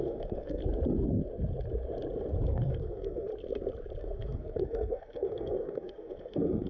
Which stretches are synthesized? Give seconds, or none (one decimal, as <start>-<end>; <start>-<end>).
0.0-0.6; 2.5-3.3; 4.0-6.7